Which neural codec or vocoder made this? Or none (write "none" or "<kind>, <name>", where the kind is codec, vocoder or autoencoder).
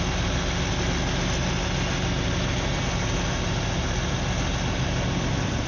none